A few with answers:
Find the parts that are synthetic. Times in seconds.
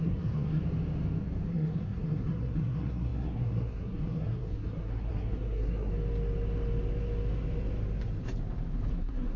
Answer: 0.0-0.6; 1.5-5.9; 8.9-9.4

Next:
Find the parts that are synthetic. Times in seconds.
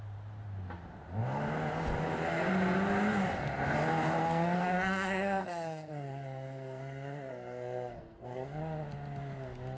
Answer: 4.2-8.6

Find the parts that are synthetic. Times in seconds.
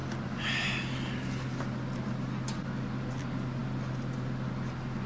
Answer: none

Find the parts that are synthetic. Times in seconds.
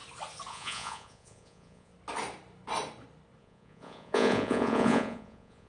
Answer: 0.5-1.9; 3.4-5.7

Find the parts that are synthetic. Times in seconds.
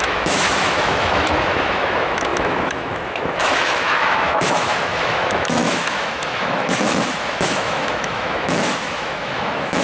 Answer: 0.0-9.8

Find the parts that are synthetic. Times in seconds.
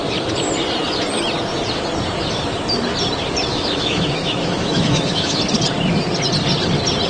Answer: 3.5-5.4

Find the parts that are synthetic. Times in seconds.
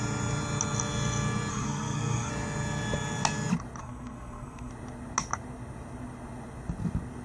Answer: 1.5-2.3; 3.8-4.7